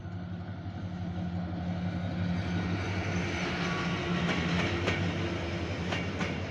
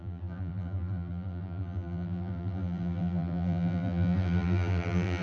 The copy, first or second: second